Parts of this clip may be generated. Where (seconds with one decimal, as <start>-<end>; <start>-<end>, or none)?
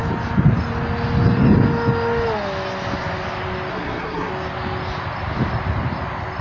3.7-4.3